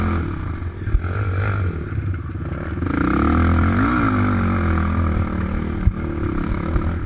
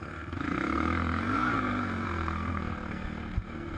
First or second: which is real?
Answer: first